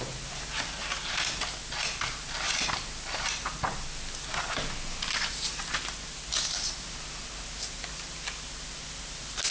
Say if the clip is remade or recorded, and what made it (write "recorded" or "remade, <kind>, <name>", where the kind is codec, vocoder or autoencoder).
recorded